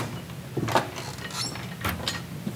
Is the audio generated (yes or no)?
no